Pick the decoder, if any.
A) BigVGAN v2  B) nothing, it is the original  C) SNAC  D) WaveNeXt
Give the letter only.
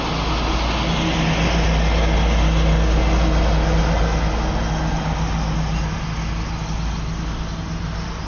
B